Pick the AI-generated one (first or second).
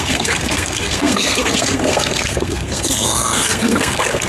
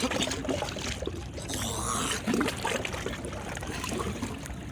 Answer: first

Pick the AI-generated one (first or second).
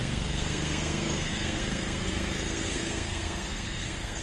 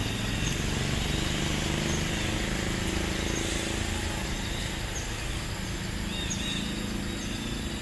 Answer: first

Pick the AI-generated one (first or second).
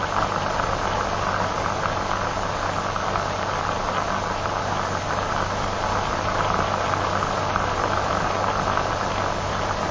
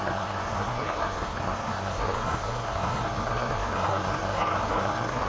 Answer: second